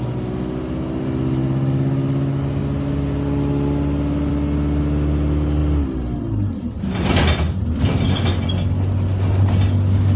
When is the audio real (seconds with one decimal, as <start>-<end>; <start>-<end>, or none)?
0.0-10.2